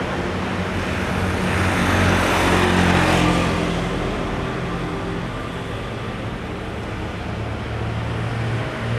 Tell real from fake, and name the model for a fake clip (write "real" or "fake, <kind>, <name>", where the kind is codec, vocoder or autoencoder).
real